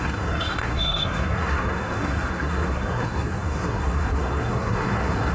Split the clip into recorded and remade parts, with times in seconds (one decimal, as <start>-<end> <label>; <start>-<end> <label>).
0.0-5.3 remade